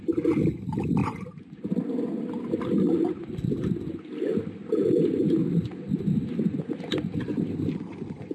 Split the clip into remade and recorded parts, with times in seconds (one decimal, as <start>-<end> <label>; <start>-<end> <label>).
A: 0.0-8.3 recorded